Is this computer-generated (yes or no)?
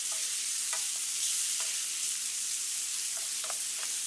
yes